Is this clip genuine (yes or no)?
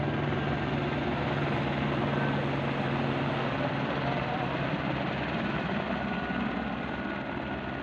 yes